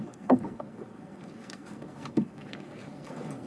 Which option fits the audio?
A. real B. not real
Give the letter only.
B